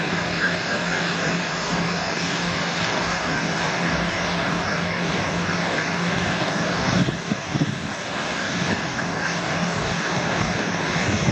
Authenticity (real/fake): fake